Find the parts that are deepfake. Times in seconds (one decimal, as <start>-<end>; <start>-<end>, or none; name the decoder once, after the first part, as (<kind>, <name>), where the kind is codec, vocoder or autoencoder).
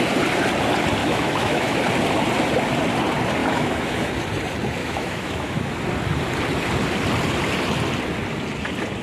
1.0-1.8 (autoencoder, DAC-VAE); 3.4-4.1; 4.8-5.7